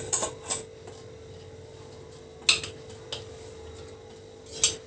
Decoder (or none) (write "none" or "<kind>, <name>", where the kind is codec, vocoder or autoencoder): none